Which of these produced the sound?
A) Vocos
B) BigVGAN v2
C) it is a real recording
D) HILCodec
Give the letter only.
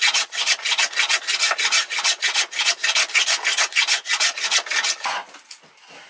C